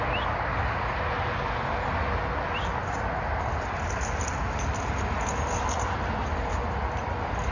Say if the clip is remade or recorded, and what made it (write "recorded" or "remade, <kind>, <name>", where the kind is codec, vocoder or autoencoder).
recorded